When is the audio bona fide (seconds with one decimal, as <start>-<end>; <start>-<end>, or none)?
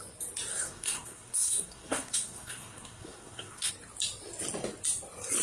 0.0-0.5; 3.7-5.4